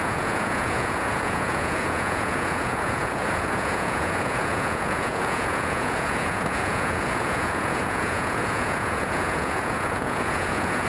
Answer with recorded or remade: remade